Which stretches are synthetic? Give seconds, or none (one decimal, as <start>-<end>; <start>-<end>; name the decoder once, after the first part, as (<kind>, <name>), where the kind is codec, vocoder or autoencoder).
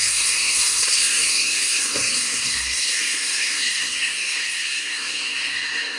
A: 0.0-6.0 (codec, SNAC)